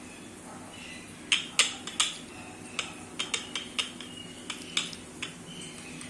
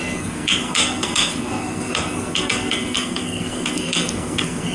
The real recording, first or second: first